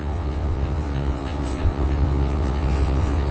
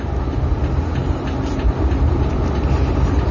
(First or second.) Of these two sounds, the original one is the second